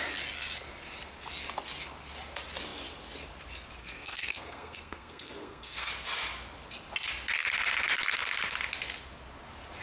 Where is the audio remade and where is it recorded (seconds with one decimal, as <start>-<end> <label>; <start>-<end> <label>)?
0.0-3.8 recorded; 3.8-5.9 remade; 5.9-9.8 recorded